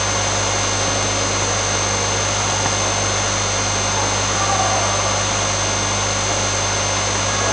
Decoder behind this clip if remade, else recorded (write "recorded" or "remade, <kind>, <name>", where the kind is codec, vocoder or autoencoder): recorded